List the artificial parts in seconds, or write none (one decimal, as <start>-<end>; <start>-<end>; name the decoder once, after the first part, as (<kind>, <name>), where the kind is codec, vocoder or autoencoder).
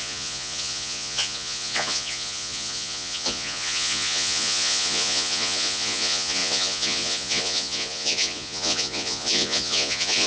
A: 0.0-10.3 (vocoder, Vocos)